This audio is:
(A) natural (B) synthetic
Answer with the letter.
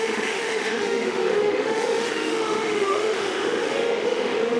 B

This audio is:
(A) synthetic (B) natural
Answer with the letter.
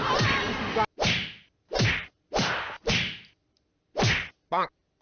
B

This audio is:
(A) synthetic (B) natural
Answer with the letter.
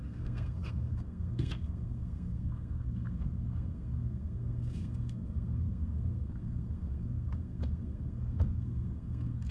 A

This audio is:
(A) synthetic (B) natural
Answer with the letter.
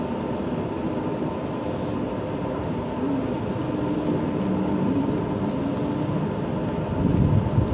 B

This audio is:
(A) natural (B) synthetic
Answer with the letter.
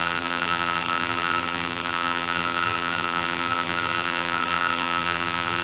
B